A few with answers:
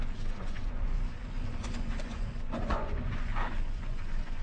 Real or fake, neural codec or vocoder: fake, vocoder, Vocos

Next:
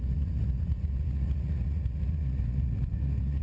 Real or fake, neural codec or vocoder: fake, vocoder, Vocos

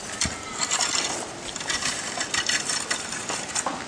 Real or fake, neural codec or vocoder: real